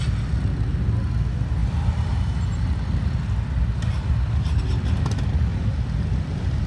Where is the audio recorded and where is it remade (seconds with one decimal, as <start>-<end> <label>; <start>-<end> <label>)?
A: 0.0-6.7 recorded